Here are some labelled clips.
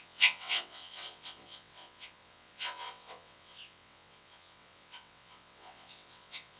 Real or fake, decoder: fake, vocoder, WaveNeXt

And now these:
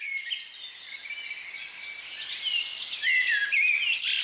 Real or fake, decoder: real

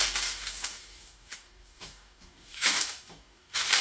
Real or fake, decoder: fake, codec, DAC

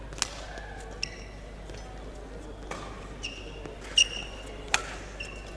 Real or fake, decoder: real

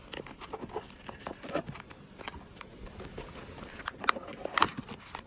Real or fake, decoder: real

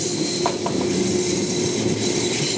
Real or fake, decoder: real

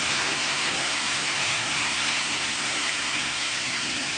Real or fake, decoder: fake, codec, SNAC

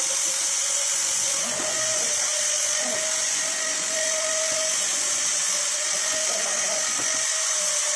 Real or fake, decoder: fake, vocoder, Vocos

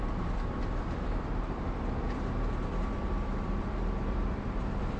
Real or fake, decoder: fake, vocoder, BigVGAN v2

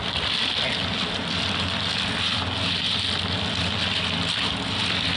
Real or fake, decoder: real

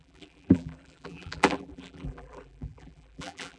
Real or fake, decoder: fake, vocoder, BigVGAN v2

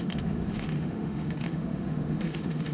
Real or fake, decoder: fake, autoencoder, DAC-VAE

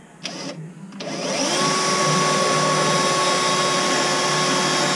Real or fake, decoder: real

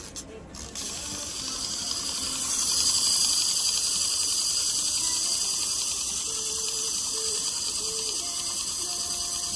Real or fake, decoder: real